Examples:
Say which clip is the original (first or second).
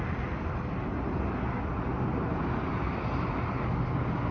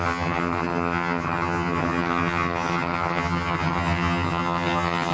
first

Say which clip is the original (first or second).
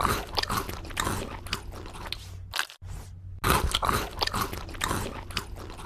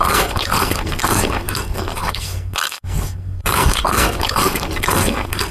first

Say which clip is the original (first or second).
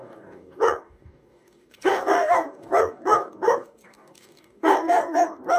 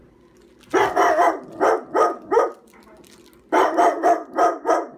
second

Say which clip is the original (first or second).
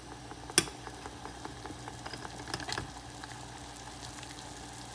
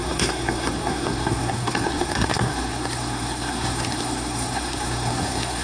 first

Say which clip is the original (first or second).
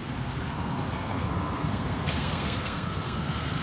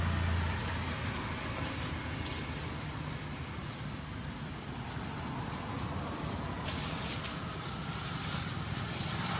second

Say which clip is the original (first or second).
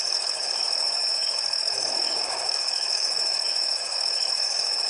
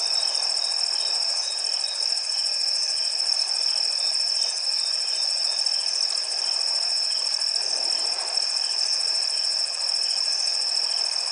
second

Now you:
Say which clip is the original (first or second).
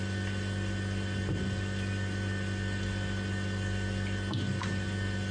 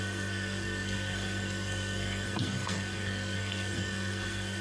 first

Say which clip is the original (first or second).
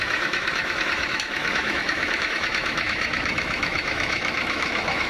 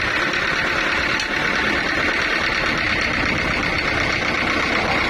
second